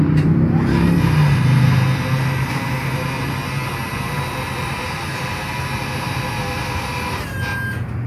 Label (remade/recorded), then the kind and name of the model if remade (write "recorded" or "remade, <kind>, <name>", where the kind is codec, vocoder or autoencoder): recorded